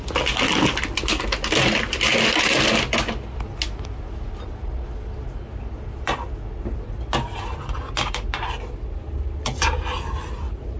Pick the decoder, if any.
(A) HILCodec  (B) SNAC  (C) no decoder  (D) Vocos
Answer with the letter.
C